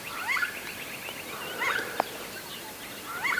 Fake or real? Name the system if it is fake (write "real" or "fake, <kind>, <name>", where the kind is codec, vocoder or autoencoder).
real